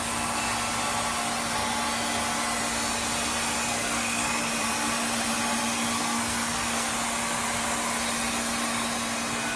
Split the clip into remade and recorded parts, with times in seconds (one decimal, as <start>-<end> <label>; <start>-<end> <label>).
0.0-3.7 recorded; 3.7-4.5 remade; 4.5-6.0 recorded; 6.0-6.9 remade; 6.9-9.6 recorded